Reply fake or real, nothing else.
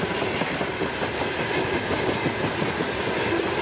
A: real